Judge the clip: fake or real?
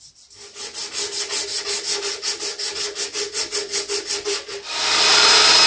real